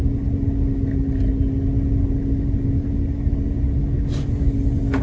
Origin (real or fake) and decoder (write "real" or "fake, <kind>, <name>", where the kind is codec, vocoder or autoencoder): real